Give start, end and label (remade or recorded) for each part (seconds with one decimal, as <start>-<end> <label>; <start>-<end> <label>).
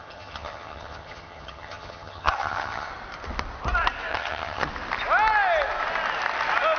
0.0-2.9 remade; 2.9-4.1 recorded; 4.1-4.7 remade; 4.7-6.8 recorded